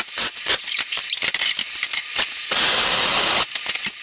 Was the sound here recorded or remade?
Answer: recorded